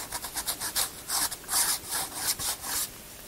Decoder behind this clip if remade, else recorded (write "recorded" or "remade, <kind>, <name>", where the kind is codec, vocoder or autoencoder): recorded